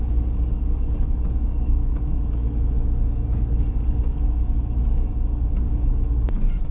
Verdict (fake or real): fake